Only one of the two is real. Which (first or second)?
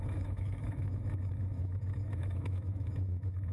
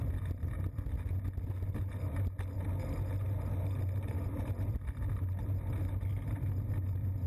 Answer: second